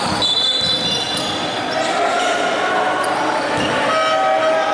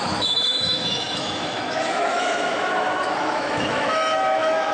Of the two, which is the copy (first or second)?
second